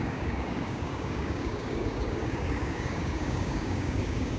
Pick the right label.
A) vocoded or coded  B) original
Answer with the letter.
A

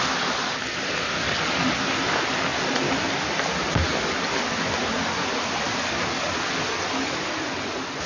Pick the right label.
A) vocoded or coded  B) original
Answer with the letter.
B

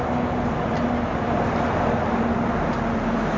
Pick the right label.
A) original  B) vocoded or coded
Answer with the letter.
A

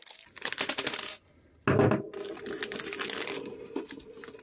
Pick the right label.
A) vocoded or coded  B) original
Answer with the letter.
B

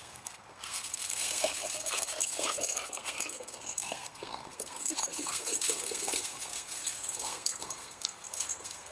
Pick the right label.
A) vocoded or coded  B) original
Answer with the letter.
A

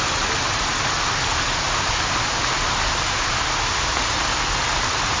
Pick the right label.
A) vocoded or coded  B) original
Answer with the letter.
B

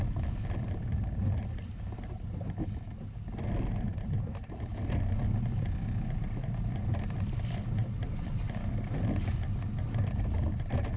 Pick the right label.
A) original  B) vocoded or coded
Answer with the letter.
A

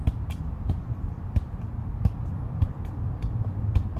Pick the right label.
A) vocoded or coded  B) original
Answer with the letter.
A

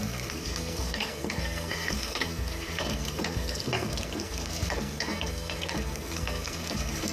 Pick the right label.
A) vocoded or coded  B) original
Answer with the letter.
A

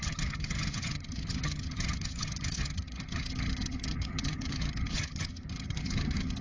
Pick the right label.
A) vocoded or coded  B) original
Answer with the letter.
A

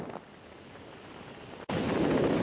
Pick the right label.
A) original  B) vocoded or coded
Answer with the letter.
A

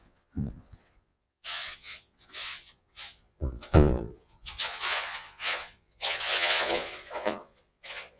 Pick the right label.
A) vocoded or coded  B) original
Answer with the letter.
A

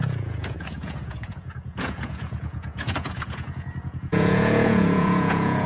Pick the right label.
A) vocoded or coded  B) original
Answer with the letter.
A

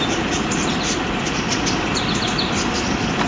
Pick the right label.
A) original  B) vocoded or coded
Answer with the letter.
A